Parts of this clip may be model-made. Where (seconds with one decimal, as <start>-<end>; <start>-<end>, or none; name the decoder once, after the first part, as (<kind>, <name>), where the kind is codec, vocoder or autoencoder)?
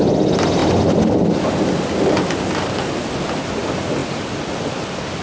none